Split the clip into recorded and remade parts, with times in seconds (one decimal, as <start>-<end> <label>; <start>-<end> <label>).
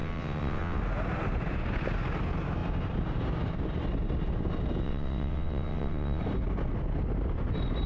0.0-0.8 remade; 0.8-4.8 recorded; 4.8-6.2 remade; 6.2-7.9 recorded